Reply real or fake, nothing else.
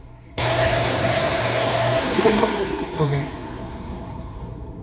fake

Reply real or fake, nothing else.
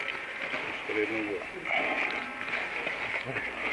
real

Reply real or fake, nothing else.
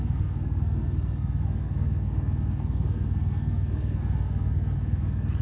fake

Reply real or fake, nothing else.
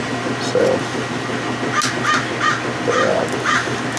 real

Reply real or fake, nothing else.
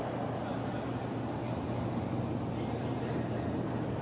real